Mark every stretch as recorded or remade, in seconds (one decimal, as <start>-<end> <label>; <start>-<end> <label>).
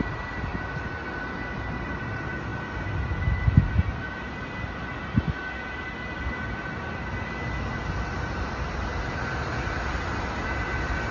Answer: 0.0-11.1 recorded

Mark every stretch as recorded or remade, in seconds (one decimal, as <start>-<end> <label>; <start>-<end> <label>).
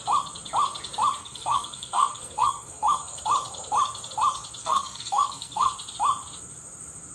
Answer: 0.0-1.2 recorded; 1.2-3.2 remade; 3.2-4.6 recorded; 4.6-5.7 remade; 5.7-7.1 recorded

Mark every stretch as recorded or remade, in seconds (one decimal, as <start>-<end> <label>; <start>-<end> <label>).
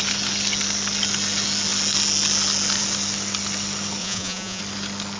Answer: 0.0-4.0 recorded; 4.0-4.6 remade; 4.6-5.2 recorded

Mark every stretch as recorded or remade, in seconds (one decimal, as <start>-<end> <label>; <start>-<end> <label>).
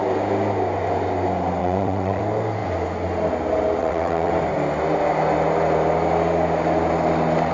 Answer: 0.0-1.6 recorded; 1.6-2.2 remade; 2.2-3.8 recorded; 3.8-4.3 remade; 4.3-7.5 recorded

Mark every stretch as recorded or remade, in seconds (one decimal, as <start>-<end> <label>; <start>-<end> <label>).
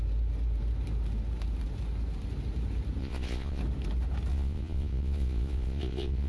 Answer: 0.0-3.0 recorded; 3.0-3.6 remade; 3.6-4.3 recorded; 4.3-6.3 remade